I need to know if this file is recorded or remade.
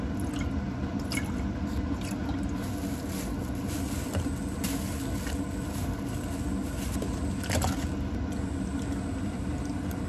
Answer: recorded